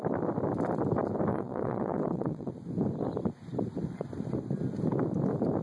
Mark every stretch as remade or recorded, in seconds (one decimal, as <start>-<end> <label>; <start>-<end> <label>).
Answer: 0.0-1.3 recorded; 1.3-2.5 remade; 2.5-5.6 recorded